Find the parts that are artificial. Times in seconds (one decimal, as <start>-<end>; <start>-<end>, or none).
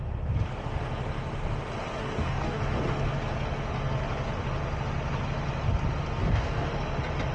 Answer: 2.0-2.6; 6.2-6.7